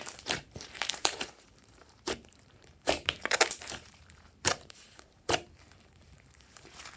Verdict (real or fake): fake